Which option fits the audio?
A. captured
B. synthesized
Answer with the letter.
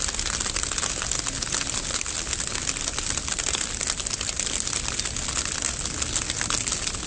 A